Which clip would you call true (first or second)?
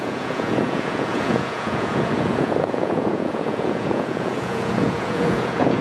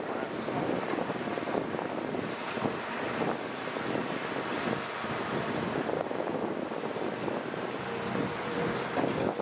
second